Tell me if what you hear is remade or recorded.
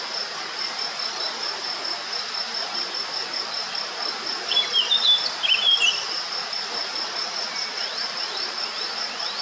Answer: recorded